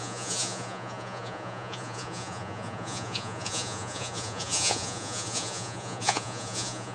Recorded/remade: remade